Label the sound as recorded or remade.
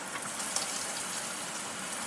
recorded